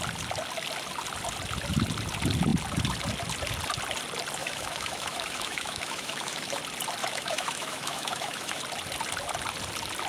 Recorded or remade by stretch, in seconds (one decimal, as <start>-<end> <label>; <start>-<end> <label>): 0.0-4.4 recorded; 4.4-6.6 remade; 6.6-7.0 recorded; 7.0-8.6 remade; 8.6-10.1 recorded

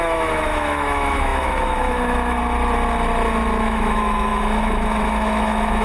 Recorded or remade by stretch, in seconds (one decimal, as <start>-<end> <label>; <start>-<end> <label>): 0.0-2.4 remade; 2.4-3.6 recorded; 3.6-5.8 remade